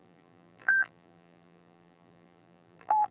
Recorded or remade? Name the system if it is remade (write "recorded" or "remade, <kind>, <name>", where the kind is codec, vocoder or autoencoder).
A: remade, vocoder, BigVGAN v2